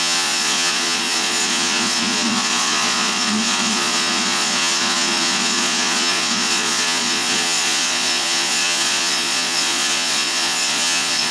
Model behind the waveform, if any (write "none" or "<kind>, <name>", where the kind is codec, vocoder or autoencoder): vocoder, Vocos